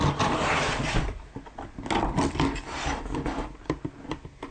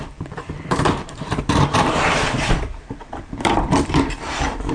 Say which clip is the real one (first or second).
first